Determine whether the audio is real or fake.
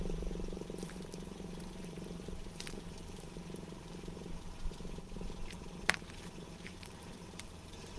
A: fake